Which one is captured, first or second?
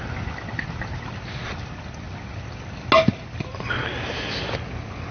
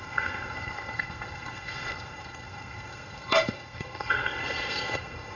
first